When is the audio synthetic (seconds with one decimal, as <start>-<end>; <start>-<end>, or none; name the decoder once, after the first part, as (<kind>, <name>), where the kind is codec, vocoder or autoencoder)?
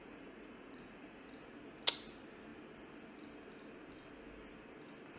0.0-1.2 (vocoder, Vocos)